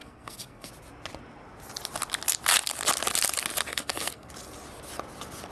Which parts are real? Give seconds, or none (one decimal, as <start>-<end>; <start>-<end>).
0.7-3.7; 4.3-5.5

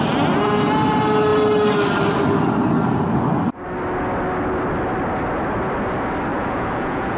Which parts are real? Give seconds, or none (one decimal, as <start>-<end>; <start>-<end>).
0.0-6.3